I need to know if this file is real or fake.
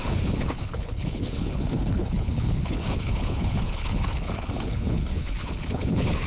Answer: fake